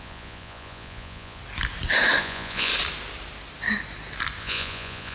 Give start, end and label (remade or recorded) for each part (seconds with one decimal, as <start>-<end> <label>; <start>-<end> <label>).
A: 0.0-1.4 remade; 1.4-2.2 recorded; 2.2-2.7 remade; 2.7-4.4 recorded; 4.4-5.1 remade